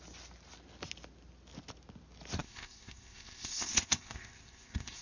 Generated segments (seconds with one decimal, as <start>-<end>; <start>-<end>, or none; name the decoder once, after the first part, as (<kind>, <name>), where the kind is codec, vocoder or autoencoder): 2.4-5.0 (codec, ZipCodec)

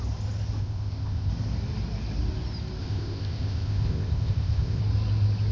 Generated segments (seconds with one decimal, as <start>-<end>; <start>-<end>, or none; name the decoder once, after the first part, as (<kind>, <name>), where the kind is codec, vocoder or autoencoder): 0.6-1.3 (codec, ZipCodec); 2.8-4.8

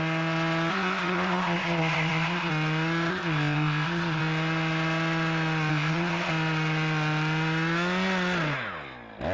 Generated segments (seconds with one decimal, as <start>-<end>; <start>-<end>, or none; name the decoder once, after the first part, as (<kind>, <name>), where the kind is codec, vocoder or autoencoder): 0.7-2.5 (codec, ZipCodec); 3.1-4.2; 5.7-6.3

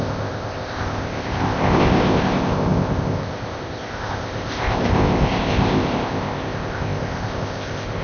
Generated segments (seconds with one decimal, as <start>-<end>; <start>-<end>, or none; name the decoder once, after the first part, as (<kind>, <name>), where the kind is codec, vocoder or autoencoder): 0.0-8.0 (codec, ZipCodec)

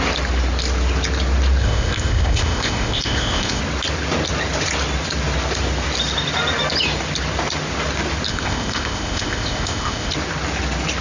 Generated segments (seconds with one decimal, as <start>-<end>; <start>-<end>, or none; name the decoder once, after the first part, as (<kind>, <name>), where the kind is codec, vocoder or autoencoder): 1.6-3.6 (codec, ZipCodec); 8.3-10.1

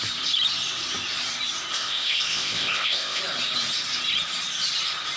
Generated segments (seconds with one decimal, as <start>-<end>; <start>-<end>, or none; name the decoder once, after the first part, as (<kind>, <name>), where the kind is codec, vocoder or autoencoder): 1.7-3.2 (codec, ZipCodec)

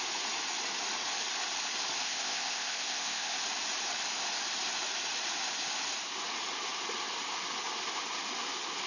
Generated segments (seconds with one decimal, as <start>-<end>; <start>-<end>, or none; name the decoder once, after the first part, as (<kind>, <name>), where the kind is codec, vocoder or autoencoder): 2.0-3.4 (codec, ZipCodec)